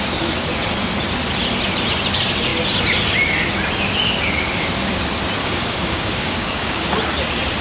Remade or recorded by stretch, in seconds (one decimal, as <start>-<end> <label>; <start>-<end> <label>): 0.0-5.4 recorded; 5.4-6.8 remade; 6.8-7.6 recorded